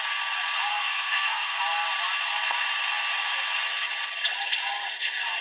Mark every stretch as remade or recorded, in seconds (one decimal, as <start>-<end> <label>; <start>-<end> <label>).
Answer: 0.0-0.7 recorded; 0.7-1.6 remade; 1.6-5.4 recorded